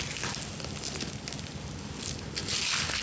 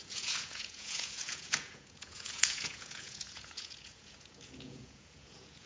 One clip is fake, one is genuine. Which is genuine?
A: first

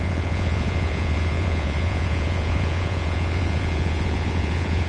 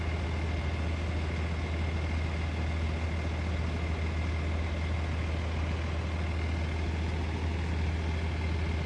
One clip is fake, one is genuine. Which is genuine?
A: second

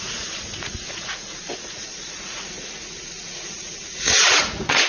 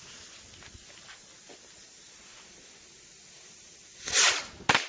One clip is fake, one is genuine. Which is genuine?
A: second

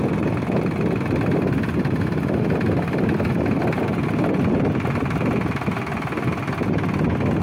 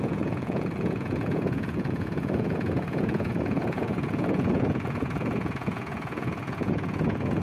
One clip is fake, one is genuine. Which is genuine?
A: first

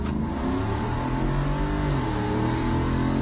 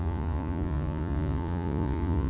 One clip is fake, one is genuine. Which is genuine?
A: first